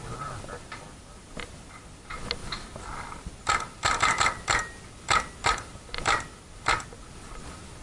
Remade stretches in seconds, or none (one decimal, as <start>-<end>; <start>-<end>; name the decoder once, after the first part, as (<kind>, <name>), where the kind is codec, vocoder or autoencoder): none